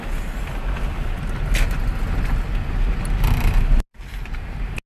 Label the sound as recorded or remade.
recorded